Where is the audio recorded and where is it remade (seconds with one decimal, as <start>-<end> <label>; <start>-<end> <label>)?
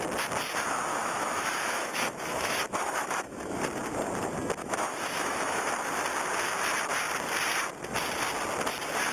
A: 0.0-0.9 recorded; 0.9-3.6 remade; 3.6-4.6 recorded; 4.6-5.7 remade; 5.7-9.1 recorded